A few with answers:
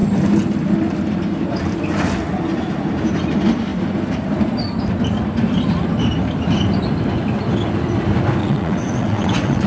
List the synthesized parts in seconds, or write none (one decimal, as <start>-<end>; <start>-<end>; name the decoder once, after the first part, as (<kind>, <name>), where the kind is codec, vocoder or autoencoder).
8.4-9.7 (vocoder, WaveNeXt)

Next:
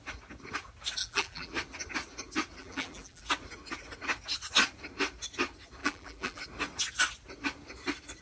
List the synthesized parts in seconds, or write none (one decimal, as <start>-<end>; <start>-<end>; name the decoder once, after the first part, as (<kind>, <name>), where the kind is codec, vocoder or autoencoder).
1.0-1.5 (vocoder, BigVGAN v2); 2.6-3.2; 5.8-6.4

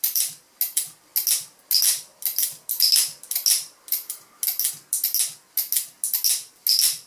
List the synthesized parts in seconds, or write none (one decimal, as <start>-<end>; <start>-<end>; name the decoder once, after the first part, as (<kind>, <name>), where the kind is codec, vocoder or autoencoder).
none

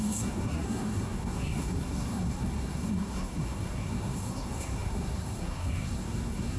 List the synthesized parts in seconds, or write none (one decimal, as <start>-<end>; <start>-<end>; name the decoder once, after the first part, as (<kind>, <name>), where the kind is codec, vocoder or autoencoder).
0.0-6.6 (codec, SNAC)

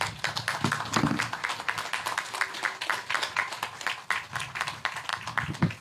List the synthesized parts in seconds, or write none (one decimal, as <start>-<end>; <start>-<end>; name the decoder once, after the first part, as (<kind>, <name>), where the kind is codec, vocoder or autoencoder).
none

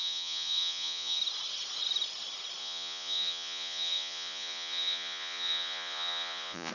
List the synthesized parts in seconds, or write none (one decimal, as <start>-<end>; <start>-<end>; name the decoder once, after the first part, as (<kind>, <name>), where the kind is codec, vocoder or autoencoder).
0.0-1.2 (vocoder, Vocos); 2.6-6.7